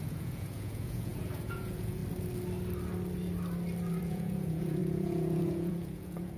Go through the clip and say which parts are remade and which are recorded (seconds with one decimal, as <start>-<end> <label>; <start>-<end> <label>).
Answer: 0.0-2.0 remade; 2.0-4.0 recorded; 4.0-6.4 remade